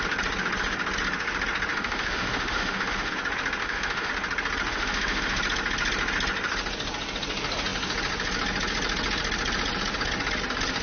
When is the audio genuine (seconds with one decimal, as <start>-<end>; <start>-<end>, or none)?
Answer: 0.0-1.7; 3.1-3.6; 4.1-4.7; 5.4-10.8